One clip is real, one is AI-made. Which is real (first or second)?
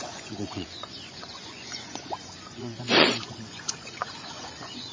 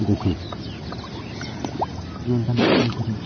second